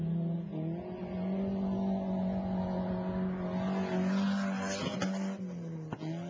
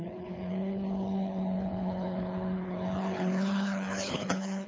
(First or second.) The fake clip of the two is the second